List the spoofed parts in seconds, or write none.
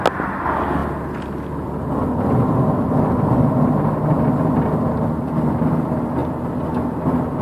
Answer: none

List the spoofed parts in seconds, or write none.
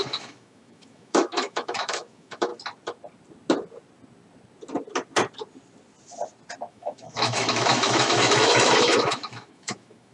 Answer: 0.0-2.5 (autoencoder, DAC-VAE); 6.7-10.1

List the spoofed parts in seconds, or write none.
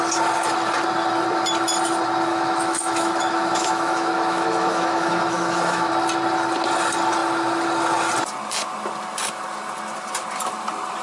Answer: 2.3-5.9 (autoencoder, DAC-VAE)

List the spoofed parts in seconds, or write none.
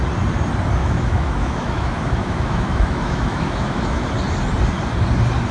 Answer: 0.8-4.1 (autoencoder, DAC-VAE)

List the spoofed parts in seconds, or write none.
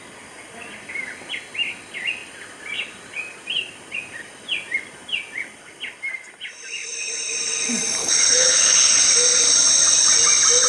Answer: 8.0-9.0 (codec, HILCodec)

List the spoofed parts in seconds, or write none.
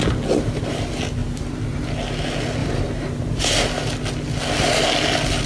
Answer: 1.2-1.8 (vocoder, BigVGAN v2); 2.6-3.5